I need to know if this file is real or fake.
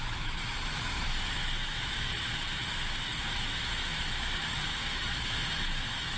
fake